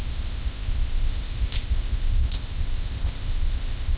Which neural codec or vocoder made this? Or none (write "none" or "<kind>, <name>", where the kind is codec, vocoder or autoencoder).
codec, ZipCodec